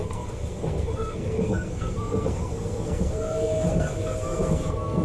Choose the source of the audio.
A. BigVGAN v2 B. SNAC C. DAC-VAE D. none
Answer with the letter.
B